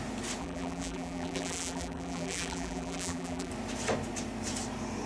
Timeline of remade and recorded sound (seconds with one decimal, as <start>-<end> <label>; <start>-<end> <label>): 0.0-0.4 recorded; 0.4-3.5 remade; 3.5-5.1 recorded